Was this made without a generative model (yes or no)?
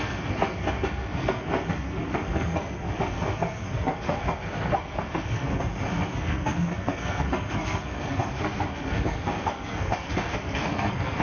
no